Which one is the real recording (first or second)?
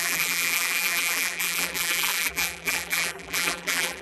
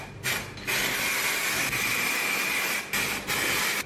second